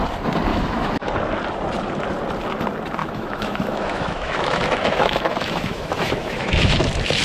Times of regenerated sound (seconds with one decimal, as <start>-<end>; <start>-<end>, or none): 0.5-1.1; 3.0-6.8